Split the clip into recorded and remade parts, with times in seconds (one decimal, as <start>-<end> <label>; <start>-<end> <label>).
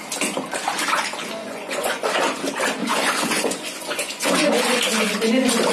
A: 0.0-1.4 recorded; 1.4-2.1 remade; 2.1-2.8 recorded; 2.8-4.8 remade; 4.8-5.7 recorded